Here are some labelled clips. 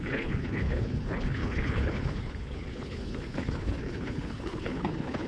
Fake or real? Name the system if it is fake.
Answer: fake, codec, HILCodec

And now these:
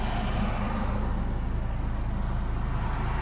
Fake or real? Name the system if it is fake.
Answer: real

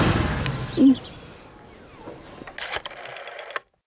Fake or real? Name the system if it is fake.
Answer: real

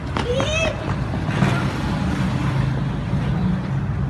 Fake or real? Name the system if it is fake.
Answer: real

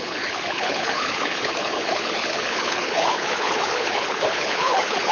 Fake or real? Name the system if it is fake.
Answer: fake, codec, HILCodec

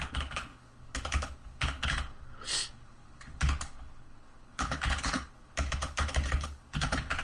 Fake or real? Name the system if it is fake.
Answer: fake, codec, HILCodec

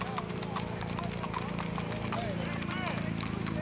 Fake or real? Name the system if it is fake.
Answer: real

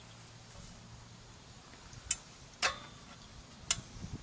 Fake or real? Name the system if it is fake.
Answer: real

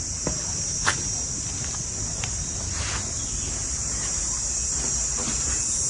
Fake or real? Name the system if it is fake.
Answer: real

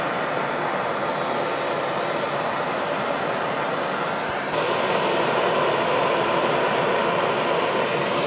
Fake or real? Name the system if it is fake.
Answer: real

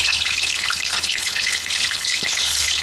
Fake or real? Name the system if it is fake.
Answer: fake, codec, HILCodec